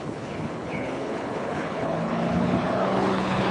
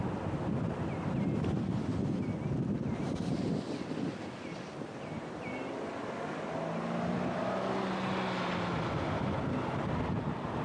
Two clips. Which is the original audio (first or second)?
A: second